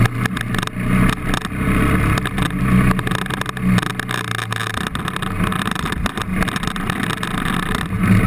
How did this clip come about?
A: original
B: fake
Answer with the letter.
A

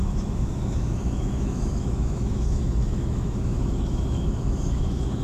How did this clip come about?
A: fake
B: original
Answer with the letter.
A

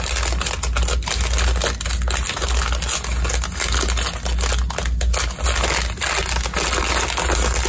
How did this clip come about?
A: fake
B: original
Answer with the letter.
B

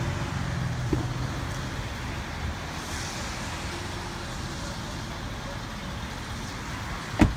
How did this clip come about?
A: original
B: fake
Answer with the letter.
A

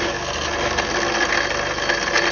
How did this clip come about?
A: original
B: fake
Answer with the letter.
A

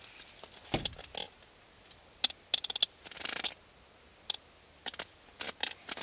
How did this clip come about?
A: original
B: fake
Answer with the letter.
A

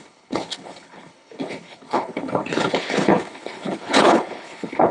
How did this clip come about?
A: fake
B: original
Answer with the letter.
A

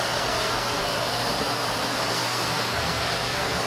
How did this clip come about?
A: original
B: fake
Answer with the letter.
B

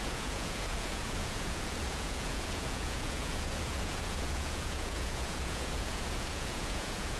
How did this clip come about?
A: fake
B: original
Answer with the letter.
A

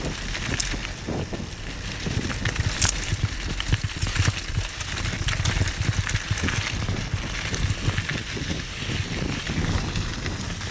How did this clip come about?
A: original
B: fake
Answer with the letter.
A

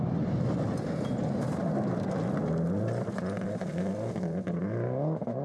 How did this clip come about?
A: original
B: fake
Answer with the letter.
A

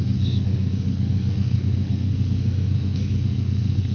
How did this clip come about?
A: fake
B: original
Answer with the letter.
A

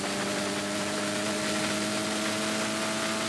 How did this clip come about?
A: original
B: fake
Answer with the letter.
A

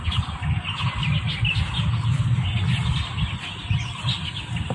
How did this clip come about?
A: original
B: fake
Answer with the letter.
A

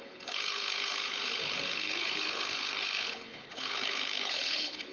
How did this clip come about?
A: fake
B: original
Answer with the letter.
A